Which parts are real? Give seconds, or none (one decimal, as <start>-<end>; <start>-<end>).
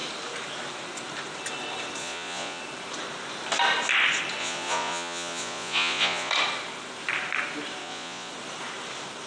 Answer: 0.0-2.0; 2.6-4.4; 6.3-7.8; 8.3-9.3